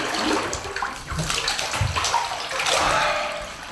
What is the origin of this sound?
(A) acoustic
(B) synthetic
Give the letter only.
A